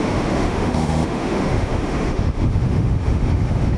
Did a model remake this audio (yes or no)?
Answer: yes